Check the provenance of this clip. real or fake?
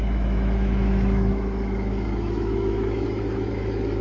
fake